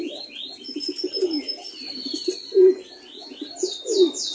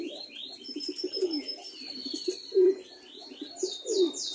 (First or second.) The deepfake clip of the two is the second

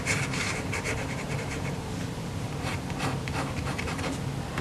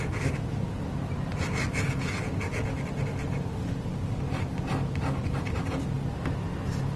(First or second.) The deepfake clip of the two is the first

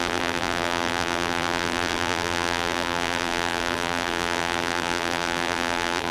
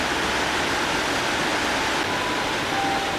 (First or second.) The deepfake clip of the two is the first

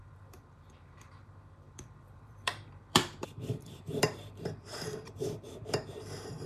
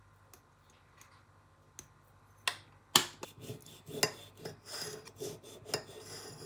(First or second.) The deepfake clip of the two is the first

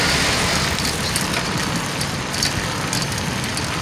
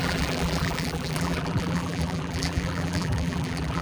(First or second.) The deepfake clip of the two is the second